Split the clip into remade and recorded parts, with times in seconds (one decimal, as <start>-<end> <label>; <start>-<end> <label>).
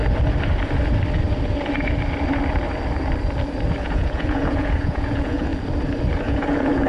0.0-3.8 recorded; 3.8-5.5 remade; 5.5-6.2 recorded; 6.2-6.9 remade